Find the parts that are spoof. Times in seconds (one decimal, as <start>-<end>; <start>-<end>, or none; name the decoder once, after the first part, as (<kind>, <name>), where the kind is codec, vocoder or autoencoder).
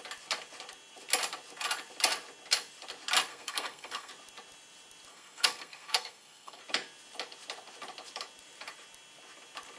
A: 3.3-4.1 (codec, SNAC); 5.1-6.6